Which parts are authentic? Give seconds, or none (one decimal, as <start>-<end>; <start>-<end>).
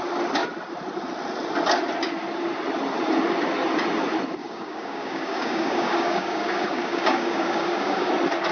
0.0-4.4; 8.1-8.5